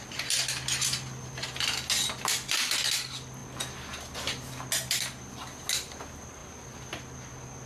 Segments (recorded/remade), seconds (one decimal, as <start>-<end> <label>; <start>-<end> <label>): 0.0-7.7 recorded

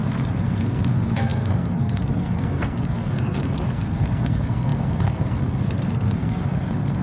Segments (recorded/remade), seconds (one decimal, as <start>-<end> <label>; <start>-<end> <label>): 0.0-7.0 remade

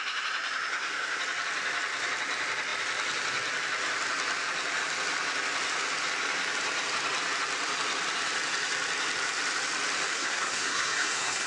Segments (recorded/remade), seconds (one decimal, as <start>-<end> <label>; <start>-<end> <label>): 0.0-0.7 recorded; 0.7-1.2 remade; 1.2-10.1 recorded; 10.1-11.5 remade

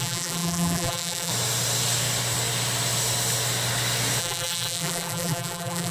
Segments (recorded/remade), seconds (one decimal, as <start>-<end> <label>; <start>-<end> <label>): 0.0-1.3 remade; 1.3-4.2 recorded; 4.2-5.9 remade

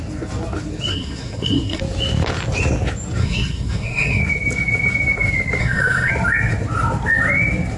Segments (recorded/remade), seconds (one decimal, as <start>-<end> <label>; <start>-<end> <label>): 0.0-0.9 recorded; 0.9-1.8 remade; 1.8-3.2 recorded; 3.2-4.2 remade; 4.2-5.6 recorded; 5.6-6.1 remade; 6.1-7.8 recorded

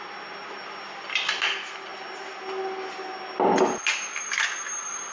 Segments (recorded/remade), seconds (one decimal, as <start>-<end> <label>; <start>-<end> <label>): 0.0-5.1 recorded

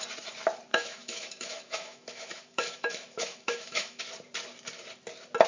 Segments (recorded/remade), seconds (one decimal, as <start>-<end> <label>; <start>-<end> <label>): 0.0-0.7 recorded; 0.7-4.0 remade; 4.0-5.5 recorded

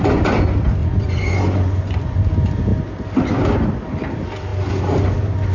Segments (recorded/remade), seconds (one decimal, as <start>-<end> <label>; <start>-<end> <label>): 0.0-0.8 recorded; 0.8-2.2 remade; 2.2-5.5 recorded